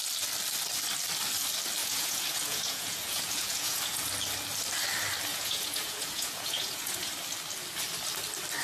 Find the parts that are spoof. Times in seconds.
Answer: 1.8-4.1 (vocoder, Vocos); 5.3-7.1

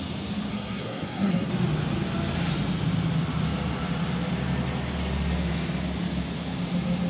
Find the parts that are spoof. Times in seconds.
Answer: 0.5-1.5 (codec, SNAC)

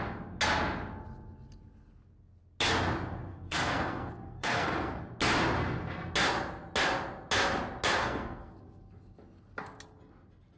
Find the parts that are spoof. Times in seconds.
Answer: 3.3-5.0 (codec, SNAC); 8.0-8.6

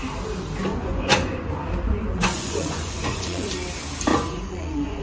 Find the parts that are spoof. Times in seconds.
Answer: 0.7-1.5 (vocoder, Vocos); 1.9-3.5; 4.1-5.0